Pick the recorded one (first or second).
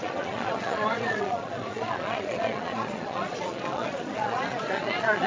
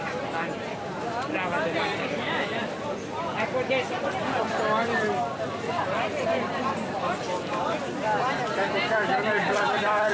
second